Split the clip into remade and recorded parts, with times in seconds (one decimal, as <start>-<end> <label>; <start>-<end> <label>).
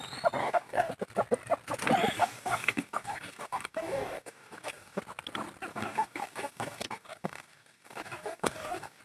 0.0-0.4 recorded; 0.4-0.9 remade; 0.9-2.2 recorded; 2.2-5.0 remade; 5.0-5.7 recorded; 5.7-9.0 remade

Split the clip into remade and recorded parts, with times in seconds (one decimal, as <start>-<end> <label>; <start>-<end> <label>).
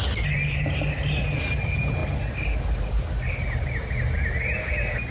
0.0-5.1 recorded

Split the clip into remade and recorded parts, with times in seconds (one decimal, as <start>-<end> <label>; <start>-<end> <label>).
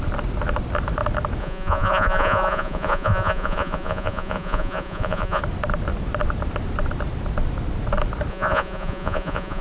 0.0-1.4 recorded; 1.4-5.4 remade; 5.4-8.3 recorded; 8.3-9.6 remade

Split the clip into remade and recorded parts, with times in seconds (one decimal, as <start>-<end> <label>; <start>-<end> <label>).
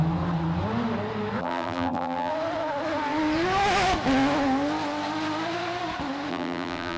0.0-1.4 recorded; 1.4-2.3 remade; 2.3-6.3 recorded; 6.3-7.0 remade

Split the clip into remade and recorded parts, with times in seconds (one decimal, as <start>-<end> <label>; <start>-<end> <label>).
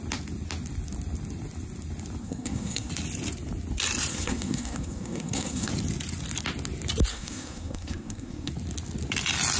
0.0-2.2 recorded; 2.2-2.9 remade; 2.9-4.1 recorded; 4.1-5.7 remade; 5.7-7.1 recorded; 7.1-8.5 remade; 8.5-9.6 recorded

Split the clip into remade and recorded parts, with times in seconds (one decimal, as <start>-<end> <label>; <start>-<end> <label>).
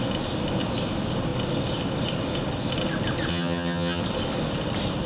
0.0-3.3 recorded; 3.3-4.0 remade; 4.0-5.1 recorded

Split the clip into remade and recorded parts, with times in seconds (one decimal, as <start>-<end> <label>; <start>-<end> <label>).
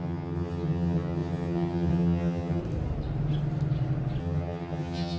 0.0-2.6 remade; 2.6-4.2 recorded; 4.2-5.2 remade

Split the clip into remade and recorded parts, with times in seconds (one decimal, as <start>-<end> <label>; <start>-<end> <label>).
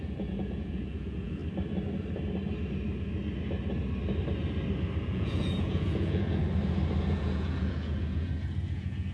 0.0-1.4 remade; 1.4-5.0 recorded; 5.0-6.4 remade; 6.4-7.0 recorded; 7.0-9.1 remade